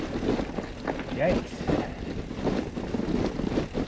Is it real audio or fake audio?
real